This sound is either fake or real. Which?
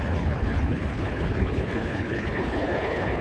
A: fake